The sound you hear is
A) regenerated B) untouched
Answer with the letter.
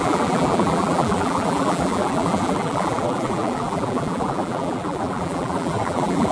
A